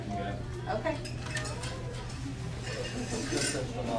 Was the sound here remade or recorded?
recorded